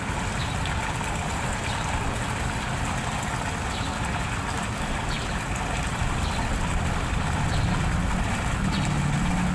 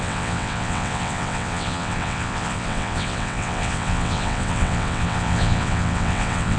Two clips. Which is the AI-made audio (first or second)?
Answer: second